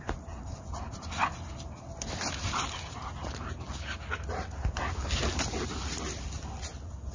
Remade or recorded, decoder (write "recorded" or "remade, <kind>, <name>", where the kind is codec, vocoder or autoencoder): recorded